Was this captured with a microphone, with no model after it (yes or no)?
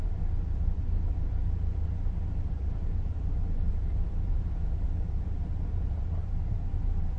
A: no